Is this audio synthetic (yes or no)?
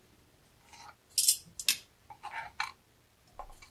no